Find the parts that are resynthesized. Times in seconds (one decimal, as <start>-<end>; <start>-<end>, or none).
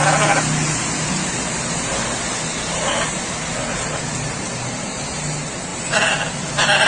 none